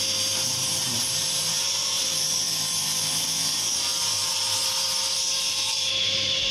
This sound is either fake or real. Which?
fake